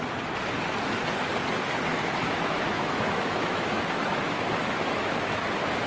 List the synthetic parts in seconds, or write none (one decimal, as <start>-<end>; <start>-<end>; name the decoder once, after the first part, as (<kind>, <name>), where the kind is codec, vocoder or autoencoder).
1.9-5.4 (autoencoder, DAC-VAE)